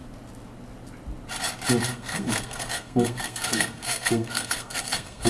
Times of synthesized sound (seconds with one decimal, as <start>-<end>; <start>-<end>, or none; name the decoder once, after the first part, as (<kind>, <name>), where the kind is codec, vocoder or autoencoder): 1.9-5.3 (codec, SNAC)